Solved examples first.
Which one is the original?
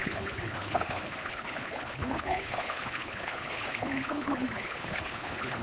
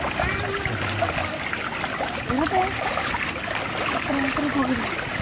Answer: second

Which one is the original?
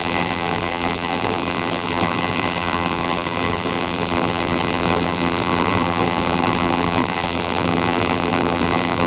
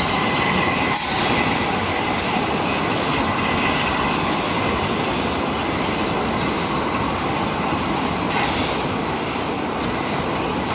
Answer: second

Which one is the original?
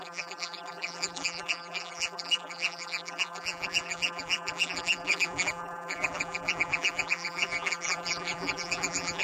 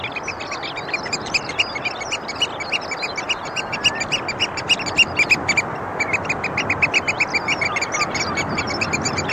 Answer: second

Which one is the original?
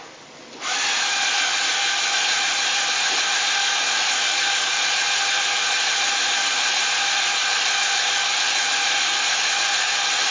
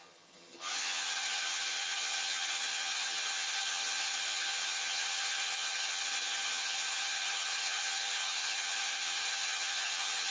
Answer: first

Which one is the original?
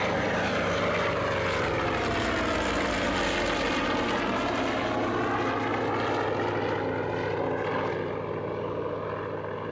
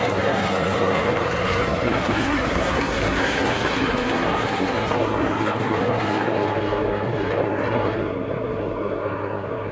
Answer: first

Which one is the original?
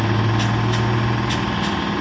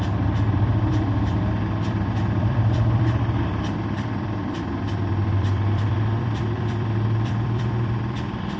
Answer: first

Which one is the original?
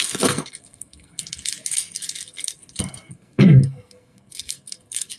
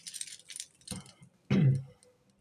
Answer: second